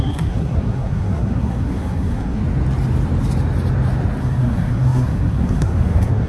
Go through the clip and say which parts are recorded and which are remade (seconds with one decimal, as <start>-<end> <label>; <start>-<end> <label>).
0.0-2.4 remade; 2.4-4.2 recorded; 4.2-6.3 remade

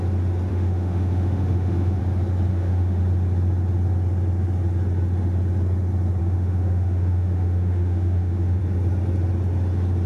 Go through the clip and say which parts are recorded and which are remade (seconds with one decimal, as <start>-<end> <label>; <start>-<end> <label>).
0.0-0.5 recorded; 0.5-2.0 remade; 2.0-2.5 recorded; 2.5-3.0 remade; 3.0-6.2 recorded; 6.2-8.6 remade; 8.6-10.1 recorded

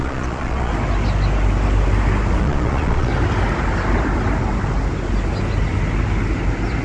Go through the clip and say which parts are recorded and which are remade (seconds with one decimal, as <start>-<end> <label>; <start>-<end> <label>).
0.0-0.7 remade; 0.7-2.4 recorded; 2.4-3.1 remade; 3.1-6.8 recorded

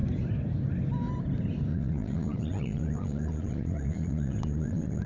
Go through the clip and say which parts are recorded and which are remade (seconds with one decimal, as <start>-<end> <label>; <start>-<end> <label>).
0.0-1.7 recorded; 1.7-5.1 remade

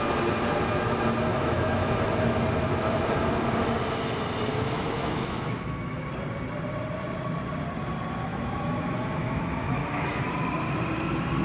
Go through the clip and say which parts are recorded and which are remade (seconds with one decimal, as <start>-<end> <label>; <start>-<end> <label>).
0.0-1.3 recorded; 1.3-2.1 remade; 2.1-4.5 recorded; 4.5-6.0 remade; 6.0-8.3 recorded; 8.3-10.2 remade; 10.2-11.4 recorded

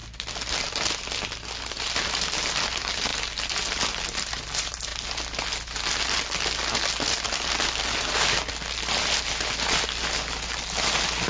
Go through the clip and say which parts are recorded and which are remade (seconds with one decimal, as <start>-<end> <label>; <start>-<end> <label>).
0.0-11.3 recorded

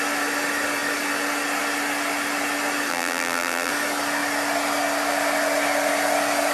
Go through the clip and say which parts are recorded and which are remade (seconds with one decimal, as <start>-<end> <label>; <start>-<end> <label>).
0.0-2.9 recorded; 2.9-3.7 remade; 3.7-6.5 recorded